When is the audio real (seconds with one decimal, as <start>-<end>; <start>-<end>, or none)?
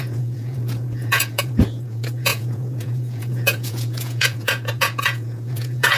none